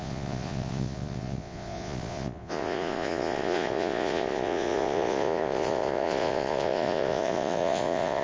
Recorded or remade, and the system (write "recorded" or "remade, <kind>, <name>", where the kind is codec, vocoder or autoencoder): remade, vocoder, Vocos